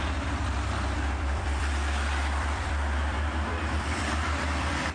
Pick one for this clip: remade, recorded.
remade